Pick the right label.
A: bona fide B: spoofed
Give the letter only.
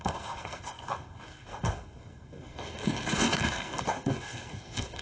B